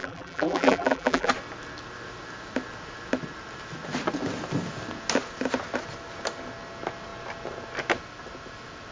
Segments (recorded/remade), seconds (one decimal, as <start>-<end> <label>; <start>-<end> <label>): 0.0-1.3 remade; 1.3-8.9 recorded